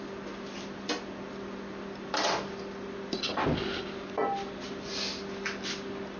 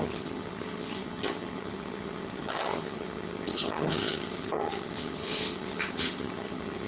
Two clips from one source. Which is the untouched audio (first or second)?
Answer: first